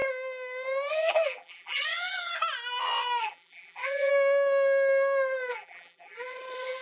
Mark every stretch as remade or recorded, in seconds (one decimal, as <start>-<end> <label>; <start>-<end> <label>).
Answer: 0.0-0.9 recorded; 0.9-2.3 remade; 2.3-3.2 recorded; 3.2-4.1 remade; 4.1-5.5 recorded; 5.5-6.8 remade